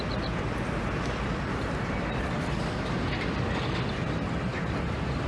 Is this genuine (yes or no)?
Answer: yes